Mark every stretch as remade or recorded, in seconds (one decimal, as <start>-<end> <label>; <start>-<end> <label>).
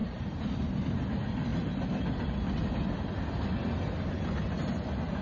0.0-0.5 remade; 0.5-5.2 recorded